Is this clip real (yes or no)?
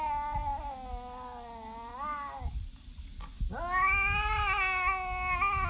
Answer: yes